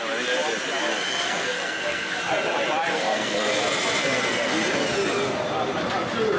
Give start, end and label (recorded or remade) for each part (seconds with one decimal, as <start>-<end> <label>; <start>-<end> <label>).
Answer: 0.0-0.9 recorded; 0.9-2.2 remade; 2.2-2.9 recorded; 2.9-3.6 remade; 3.6-4.0 recorded; 4.0-4.5 remade; 4.5-6.4 recorded